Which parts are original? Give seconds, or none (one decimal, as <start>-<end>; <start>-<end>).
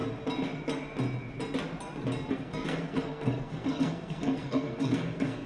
0.0-2.3